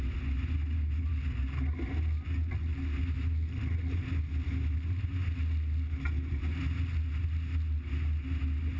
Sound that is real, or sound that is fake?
real